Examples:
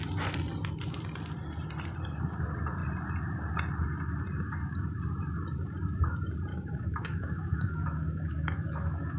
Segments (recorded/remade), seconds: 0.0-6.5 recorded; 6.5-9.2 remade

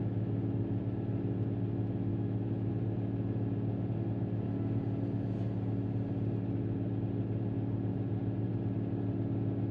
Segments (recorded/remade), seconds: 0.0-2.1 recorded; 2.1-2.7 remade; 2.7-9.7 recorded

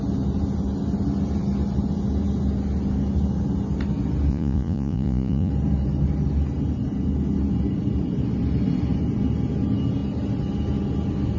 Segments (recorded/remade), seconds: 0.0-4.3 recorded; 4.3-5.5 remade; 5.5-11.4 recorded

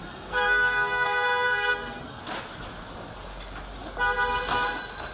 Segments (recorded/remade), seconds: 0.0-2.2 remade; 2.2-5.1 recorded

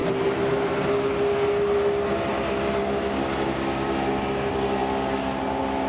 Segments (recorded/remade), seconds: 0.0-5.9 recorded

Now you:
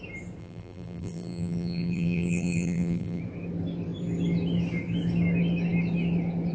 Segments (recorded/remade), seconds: 0.0-0.4 recorded; 0.4-3.2 remade; 3.2-6.5 recorded

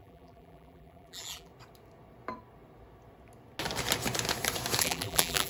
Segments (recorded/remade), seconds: 0.0-1.5 remade; 1.5-4.8 recorded; 4.8-5.5 remade